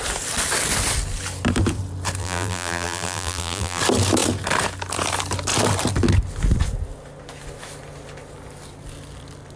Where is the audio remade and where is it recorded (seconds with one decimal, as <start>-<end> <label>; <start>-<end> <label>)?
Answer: 0.0-2.2 recorded; 2.2-3.8 remade; 3.8-9.6 recorded